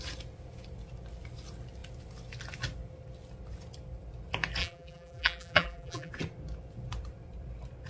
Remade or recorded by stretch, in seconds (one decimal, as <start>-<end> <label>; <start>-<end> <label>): 0.0-4.6 recorded; 4.6-6.1 remade; 6.1-7.9 recorded